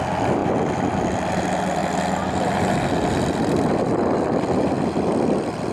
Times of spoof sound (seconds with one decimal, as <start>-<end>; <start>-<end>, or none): none